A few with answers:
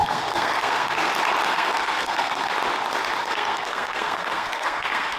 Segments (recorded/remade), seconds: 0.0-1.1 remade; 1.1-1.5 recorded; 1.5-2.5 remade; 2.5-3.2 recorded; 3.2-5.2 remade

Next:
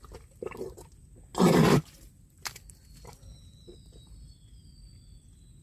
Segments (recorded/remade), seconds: 0.0-5.6 recorded

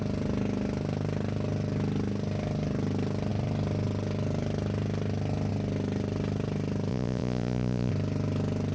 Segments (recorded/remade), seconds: 0.0-6.9 recorded; 6.9-7.9 remade; 7.9-8.7 recorded

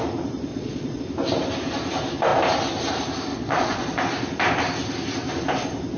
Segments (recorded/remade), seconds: 0.0-0.5 recorded; 0.5-1.0 remade; 1.0-3.3 recorded; 3.3-4.0 remade; 4.0-6.0 recorded

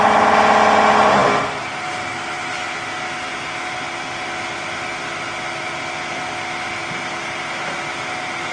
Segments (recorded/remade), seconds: 0.0-8.5 recorded

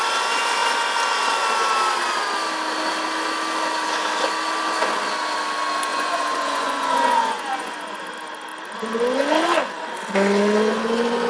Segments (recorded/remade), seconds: 0.0-5.9 recorded; 5.9-8.0 remade; 8.0-11.3 recorded

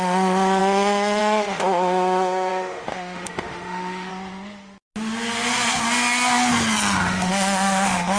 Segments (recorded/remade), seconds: 0.0-4.1 remade; 4.1-7.0 recorded; 7.0-8.2 remade